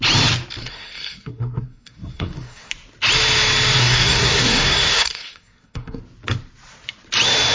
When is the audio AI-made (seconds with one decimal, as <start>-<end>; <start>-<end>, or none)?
0.6-2.7; 3.8-6.0